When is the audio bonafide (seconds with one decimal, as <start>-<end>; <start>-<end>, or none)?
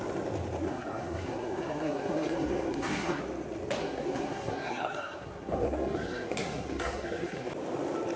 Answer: 0.0-0.6; 3.2-3.8; 7.5-8.2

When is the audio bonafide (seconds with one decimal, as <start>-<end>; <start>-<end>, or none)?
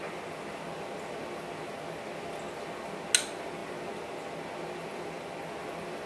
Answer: 0.0-6.1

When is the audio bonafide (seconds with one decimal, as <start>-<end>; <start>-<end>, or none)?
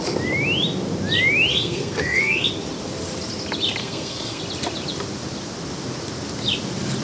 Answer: 0.0-1.5; 2.5-3.8; 4.4-7.0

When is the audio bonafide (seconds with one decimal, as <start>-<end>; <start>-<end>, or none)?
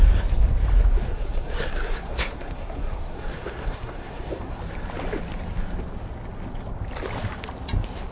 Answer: 0.0-1.1; 4.6-8.1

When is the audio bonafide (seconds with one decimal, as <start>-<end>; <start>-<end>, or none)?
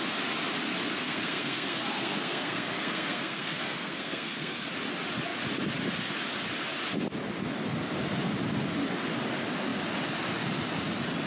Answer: 0.0-0.9; 4.7-11.3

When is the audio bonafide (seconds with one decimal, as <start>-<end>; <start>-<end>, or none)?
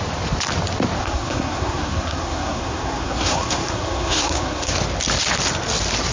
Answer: 0.0-1.0; 4.7-6.1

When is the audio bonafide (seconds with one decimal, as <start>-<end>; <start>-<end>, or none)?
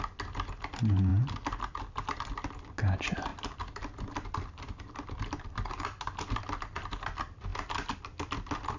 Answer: 0.0-8.8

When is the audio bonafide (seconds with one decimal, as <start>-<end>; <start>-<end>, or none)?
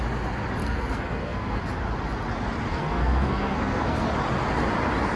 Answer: 0.0-0.6; 1.6-2.7; 4.1-5.2